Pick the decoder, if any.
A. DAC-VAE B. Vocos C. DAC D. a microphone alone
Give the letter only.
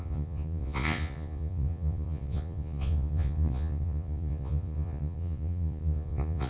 B